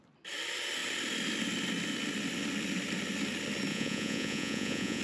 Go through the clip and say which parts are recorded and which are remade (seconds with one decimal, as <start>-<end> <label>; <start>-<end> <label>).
0.0-3.7 recorded; 3.7-5.0 remade